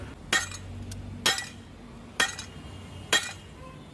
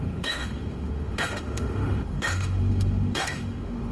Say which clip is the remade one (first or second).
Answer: second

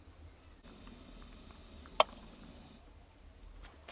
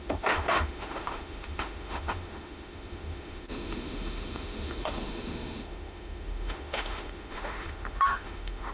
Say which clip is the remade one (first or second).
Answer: second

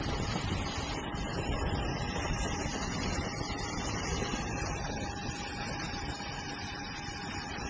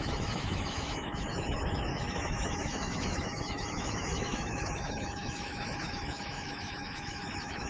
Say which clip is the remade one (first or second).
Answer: second